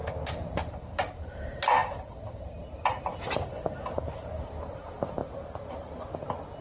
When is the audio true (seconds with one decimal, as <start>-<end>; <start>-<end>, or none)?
0.0-0.7; 5.2-6.6